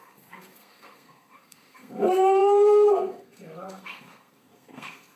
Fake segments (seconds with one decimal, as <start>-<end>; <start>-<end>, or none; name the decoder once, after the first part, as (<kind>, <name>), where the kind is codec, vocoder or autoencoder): 0.0-5.2 (codec, SNAC)